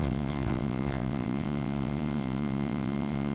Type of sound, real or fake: fake